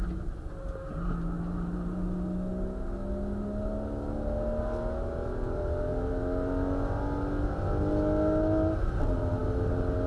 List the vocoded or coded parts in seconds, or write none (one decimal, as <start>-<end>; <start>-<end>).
none

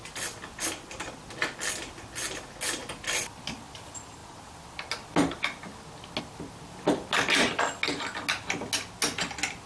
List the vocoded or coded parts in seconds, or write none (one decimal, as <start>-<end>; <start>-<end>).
none

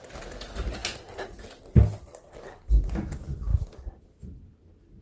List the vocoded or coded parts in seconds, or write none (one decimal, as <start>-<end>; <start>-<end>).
none